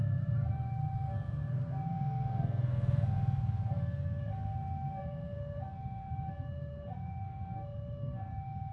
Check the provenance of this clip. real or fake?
fake